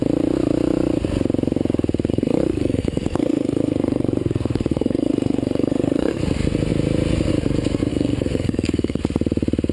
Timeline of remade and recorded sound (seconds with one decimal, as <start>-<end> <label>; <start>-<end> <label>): 0.0-2.1 recorded; 2.1-6.2 remade; 6.2-7.9 recorded; 7.9-9.0 remade; 9.0-9.7 recorded